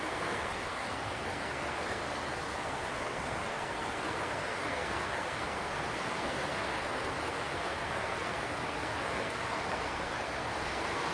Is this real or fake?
fake